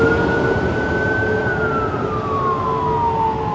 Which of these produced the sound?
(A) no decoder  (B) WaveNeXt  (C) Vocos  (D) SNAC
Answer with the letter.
A